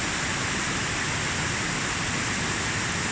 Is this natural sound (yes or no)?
yes